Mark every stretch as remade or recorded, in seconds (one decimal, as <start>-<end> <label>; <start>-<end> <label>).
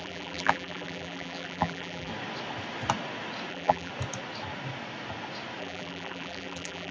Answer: 0.0-2.1 remade; 2.1-3.5 recorded; 3.5-3.9 remade; 3.9-5.6 recorded; 5.6-6.9 remade